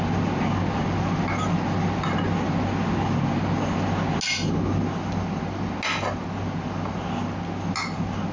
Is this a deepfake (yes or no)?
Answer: no